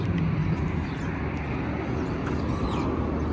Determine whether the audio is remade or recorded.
recorded